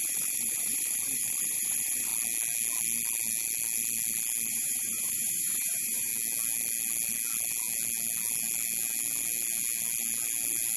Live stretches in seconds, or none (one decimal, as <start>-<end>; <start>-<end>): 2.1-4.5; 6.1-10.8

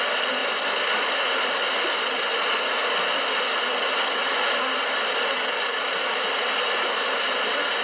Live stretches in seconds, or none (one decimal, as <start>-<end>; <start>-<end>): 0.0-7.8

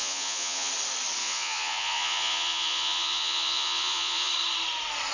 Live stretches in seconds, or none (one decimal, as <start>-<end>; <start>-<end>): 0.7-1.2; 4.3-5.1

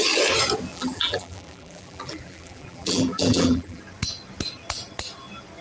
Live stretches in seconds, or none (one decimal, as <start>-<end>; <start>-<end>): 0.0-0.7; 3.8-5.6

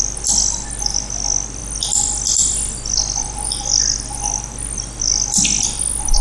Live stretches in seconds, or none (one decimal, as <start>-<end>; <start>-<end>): 0.0-6.2

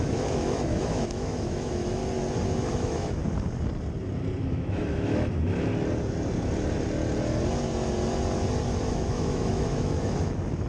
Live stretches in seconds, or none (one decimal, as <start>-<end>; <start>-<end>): 2.0-2.7; 3.2-4.4; 5.7-8.9

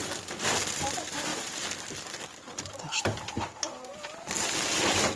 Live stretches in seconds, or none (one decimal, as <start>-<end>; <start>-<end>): 0.0-5.2